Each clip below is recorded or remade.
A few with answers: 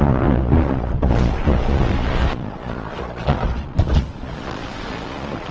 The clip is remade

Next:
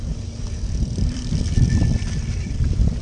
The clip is remade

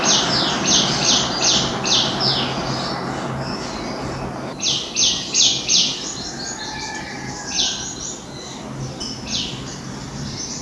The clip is recorded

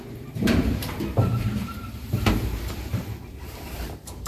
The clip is remade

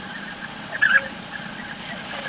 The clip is remade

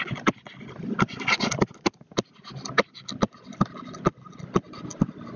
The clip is recorded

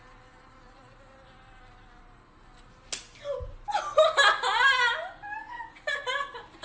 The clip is recorded